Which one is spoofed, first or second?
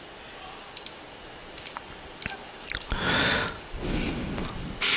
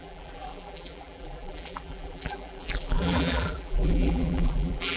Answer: second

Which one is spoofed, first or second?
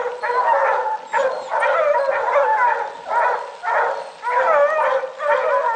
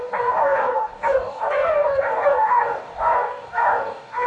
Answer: second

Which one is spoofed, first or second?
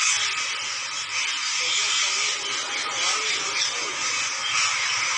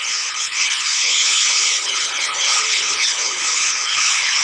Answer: second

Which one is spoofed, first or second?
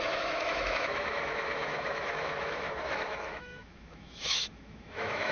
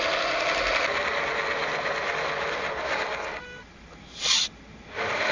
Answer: first